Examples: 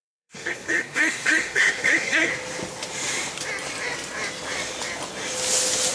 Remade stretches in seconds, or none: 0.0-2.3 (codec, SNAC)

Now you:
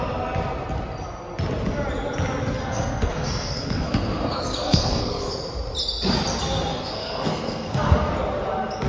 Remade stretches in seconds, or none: 2.6-5.3 (codec, SNAC); 6.7-8.1

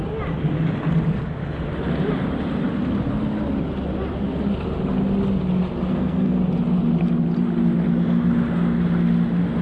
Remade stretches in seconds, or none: 5.9-6.4 (codec, SNAC)